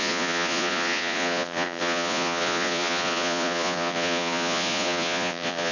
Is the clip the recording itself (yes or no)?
no